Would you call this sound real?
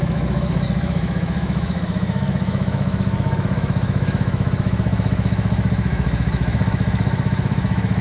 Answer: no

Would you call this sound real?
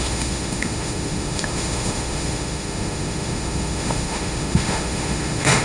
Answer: no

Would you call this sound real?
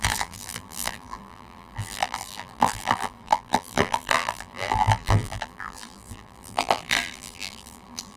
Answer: no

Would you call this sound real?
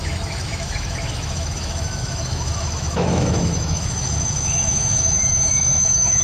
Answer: no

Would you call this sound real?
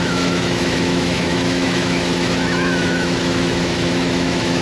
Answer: no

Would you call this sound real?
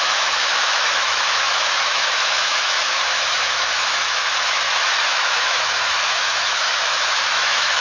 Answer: no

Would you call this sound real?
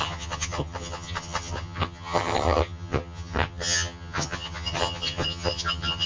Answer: no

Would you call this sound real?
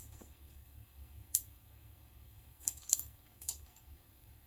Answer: no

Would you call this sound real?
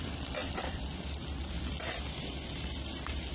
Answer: no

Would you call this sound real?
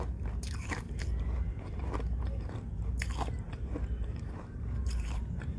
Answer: no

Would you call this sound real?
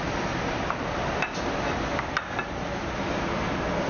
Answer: yes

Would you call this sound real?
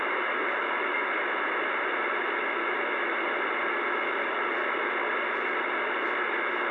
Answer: yes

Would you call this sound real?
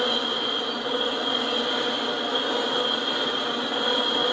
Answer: yes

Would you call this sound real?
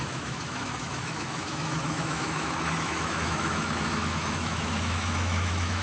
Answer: no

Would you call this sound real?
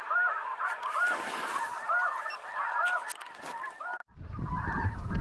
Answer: yes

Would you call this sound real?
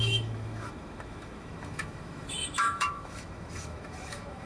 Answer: no